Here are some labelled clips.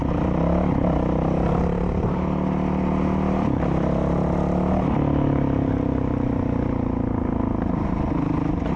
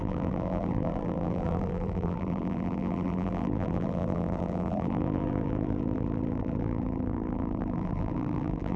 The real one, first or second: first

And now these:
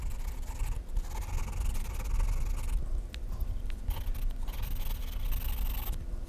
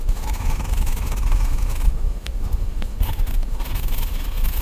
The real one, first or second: first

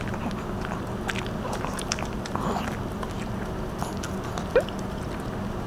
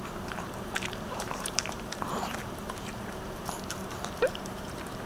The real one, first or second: first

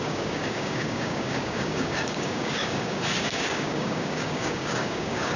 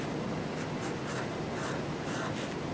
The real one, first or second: second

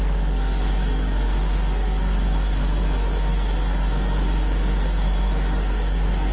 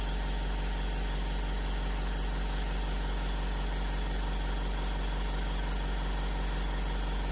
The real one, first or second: second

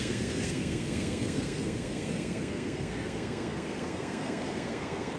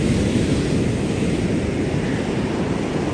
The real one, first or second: second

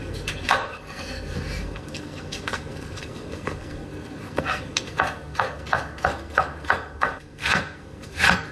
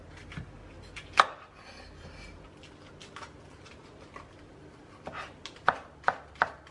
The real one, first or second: second